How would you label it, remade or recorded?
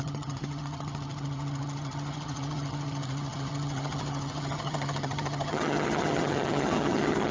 remade